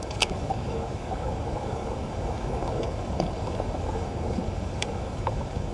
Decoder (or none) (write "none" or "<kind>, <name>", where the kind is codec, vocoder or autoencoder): codec, DAC